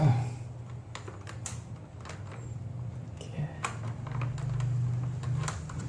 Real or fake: real